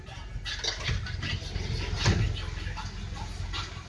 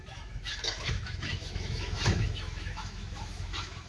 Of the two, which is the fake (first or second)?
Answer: second